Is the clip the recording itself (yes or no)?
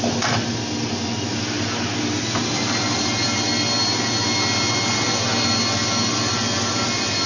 yes